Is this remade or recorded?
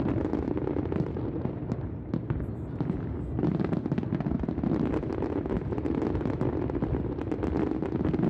recorded